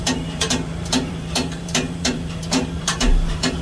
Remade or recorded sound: remade